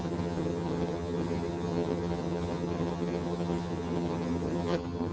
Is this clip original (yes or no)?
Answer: no